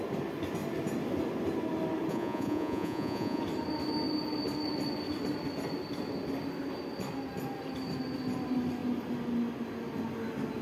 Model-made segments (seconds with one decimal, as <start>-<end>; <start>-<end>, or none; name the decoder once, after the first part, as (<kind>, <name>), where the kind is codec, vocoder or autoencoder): 2.1-3.4 (vocoder, Vocos)